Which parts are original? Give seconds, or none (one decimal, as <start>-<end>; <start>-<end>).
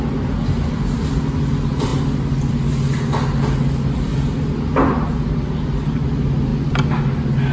0.0-7.5